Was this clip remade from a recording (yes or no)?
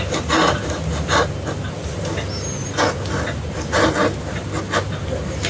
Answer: no